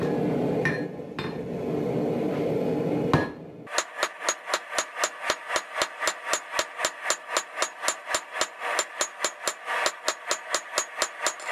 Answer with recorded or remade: recorded